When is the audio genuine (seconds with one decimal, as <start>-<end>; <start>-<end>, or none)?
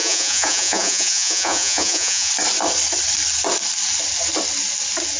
2.3-5.2